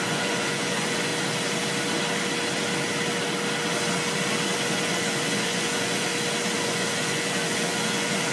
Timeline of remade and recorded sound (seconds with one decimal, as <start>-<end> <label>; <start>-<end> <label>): 0.0-1.1 remade; 1.1-4.7 recorded; 4.7-6.1 remade; 6.1-6.6 recorded; 6.6-8.3 remade